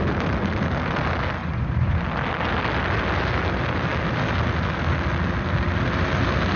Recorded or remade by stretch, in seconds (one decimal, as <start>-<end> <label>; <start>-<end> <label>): 0.0-1.4 recorded; 1.4-2.0 remade; 2.0-6.6 recorded